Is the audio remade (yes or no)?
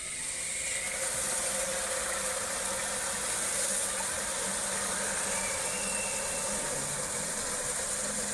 no